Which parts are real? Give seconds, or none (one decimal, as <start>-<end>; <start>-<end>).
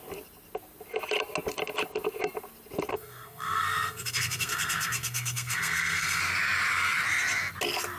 0.0-2.9; 6.2-8.0